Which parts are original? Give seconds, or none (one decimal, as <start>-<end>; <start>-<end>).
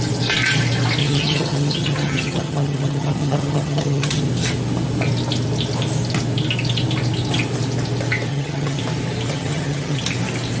0.0-1.0; 4.2-8.3; 8.8-9.3; 10.0-10.6